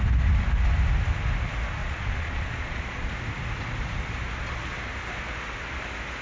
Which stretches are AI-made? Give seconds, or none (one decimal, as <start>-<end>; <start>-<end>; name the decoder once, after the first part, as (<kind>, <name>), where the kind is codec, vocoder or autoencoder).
1.8-3.1 (vocoder, Vocos)